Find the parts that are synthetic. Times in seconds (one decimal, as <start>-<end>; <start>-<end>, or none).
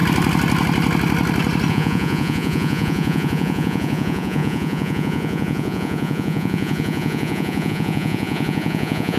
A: 1.7-9.2